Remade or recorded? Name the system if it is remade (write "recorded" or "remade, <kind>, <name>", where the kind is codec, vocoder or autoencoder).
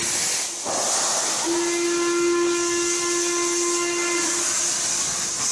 recorded